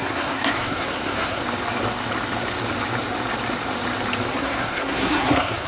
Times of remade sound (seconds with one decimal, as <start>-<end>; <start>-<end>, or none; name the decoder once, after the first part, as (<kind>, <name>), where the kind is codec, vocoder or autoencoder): 0.0-1.4 (codec, SNAC); 4.3-5.7